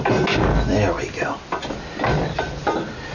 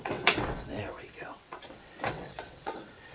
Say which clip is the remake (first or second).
second